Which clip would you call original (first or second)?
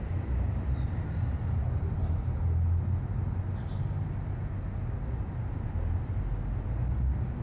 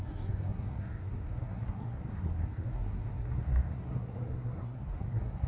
first